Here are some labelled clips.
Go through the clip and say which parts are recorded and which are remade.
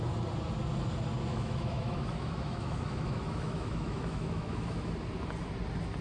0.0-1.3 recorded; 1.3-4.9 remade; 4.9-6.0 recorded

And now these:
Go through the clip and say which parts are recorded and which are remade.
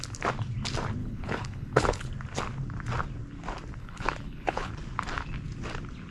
0.0-1.0 recorded; 1.0-2.1 remade; 2.1-3.8 recorded; 3.8-4.7 remade; 4.7-6.1 recorded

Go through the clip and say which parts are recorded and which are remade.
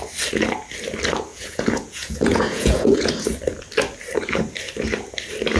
0.0-1.3 recorded; 1.3-3.1 remade; 3.1-5.6 recorded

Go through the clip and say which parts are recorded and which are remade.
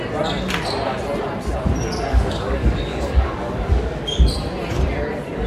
0.0-2.1 recorded; 2.1-4.2 remade; 4.2-5.5 recorded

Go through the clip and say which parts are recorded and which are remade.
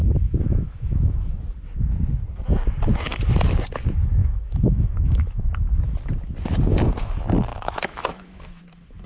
0.0-1.4 remade; 1.4-4.2 recorded; 4.2-5.5 remade; 5.5-7.5 recorded; 7.5-8.6 remade; 8.6-9.1 recorded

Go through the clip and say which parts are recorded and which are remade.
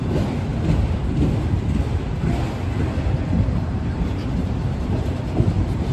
0.0-0.5 remade; 0.5-4.0 recorded; 4.0-5.9 remade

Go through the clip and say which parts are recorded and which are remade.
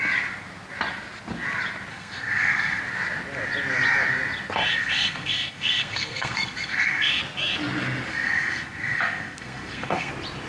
0.0-1.9 recorded; 1.9-2.8 remade; 2.8-4.7 recorded; 4.7-7.2 remade; 7.2-8.1 recorded; 8.1-10.1 remade; 10.1-10.5 recorded